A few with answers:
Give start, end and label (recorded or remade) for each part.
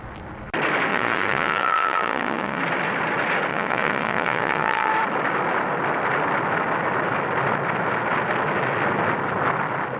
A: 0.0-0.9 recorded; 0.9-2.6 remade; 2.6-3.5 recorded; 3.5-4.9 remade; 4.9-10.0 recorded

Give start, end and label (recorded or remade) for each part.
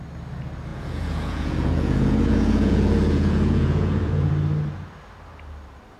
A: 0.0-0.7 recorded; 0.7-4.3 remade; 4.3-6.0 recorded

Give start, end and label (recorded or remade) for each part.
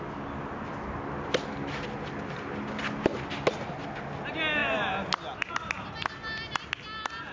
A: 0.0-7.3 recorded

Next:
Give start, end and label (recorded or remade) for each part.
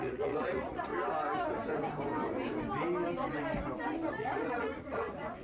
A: 0.0-0.9 remade; 0.9-4.1 recorded; 4.1-5.4 remade